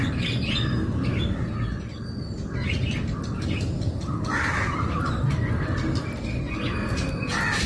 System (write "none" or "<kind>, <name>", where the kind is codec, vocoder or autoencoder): none